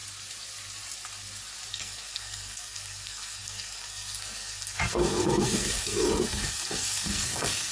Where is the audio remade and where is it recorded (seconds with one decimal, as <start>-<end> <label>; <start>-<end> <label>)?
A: 0.0-1.7 recorded; 1.7-7.7 remade

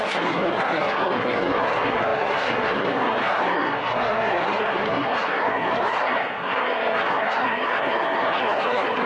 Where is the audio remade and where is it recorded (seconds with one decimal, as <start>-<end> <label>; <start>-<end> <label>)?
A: 0.0-9.1 remade

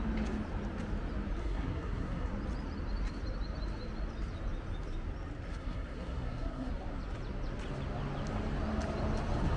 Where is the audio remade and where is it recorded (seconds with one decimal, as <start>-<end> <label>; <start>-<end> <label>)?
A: 0.0-1.4 recorded; 1.4-2.3 remade; 2.3-5.5 recorded; 5.5-6.7 remade; 6.7-9.6 recorded

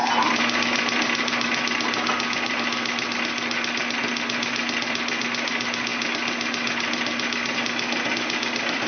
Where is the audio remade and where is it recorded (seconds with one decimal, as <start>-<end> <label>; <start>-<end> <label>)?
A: 0.0-8.9 recorded

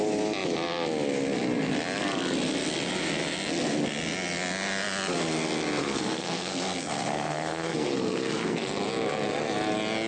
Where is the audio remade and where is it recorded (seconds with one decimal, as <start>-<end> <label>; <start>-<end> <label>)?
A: 0.0-5.8 recorded; 5.8-8.7 remade; 8.7-10.1 recorded

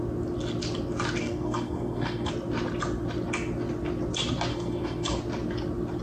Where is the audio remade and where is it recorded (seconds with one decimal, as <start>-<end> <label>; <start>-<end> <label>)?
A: 0.0-1.2 recorded; 1.2-2.3 remade; 2.3-4.5 recorded; 4.5-5.2 remade; 5.2-6.0 recorded